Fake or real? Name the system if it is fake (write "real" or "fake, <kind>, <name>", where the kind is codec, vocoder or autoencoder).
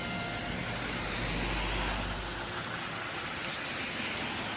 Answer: real